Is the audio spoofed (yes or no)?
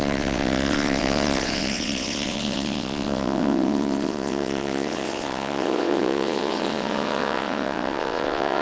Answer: yes